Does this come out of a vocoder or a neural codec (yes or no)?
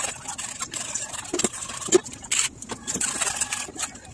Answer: no